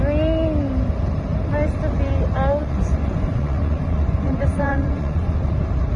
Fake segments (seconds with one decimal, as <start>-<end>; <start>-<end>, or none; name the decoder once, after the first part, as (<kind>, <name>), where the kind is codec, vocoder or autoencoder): 2.6-5.5 (vocoder, Vocos)